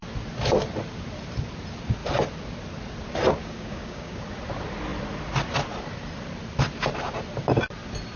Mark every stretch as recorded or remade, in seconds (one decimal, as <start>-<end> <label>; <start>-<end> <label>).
0.0-3.4 recorded; 3.4-4.2 remade; 4.2-8.2 recorded

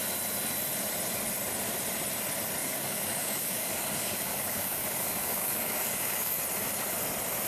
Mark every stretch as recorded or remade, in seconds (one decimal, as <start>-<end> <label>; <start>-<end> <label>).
0.0-2.6 recorded; 2.6-6.4 remade; 6.4-7.5 recorded